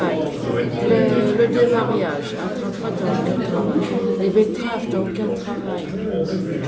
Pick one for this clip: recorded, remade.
recorded